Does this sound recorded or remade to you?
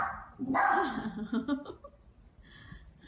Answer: recorded